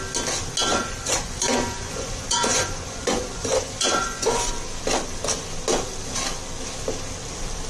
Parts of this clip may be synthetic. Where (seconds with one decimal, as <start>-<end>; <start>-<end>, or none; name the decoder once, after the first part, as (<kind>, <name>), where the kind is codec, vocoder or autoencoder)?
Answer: 0.7-4.5 (vocoder, Vocos)